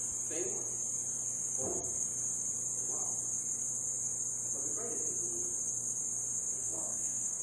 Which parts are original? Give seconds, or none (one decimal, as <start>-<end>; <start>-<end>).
0.0-6.6